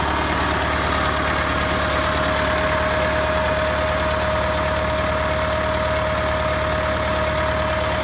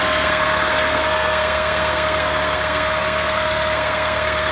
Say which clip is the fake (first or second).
second